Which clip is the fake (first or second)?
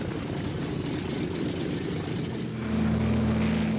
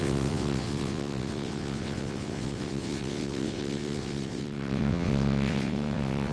second